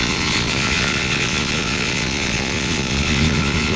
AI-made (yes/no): yes